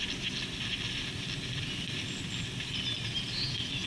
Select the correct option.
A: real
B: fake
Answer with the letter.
A